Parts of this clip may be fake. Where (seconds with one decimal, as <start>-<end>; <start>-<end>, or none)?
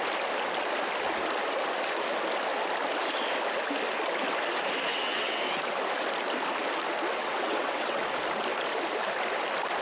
4.9-5.4; 7.2-8.0